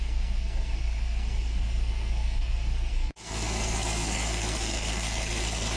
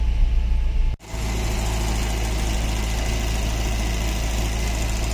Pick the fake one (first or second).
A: first